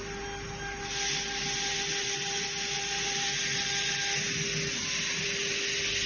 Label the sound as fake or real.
real